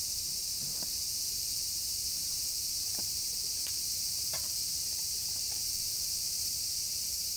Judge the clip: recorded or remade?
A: remade